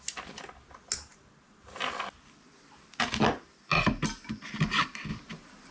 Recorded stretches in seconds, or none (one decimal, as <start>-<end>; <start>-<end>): 0.0-5.7